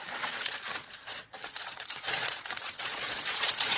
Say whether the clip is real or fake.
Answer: fake